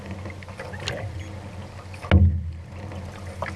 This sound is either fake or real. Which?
real